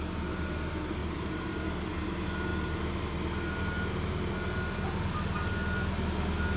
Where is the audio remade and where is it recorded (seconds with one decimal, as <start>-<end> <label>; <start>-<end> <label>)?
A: 0.0-1.0 recorded; 1.0-1.9 remade; 1.9-6.6 recorded